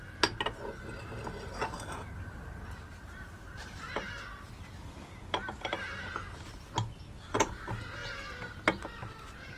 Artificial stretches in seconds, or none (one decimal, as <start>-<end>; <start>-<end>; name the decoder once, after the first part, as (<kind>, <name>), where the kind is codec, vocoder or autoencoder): 2.9-6.1 (vocoder, BigVGAN v2)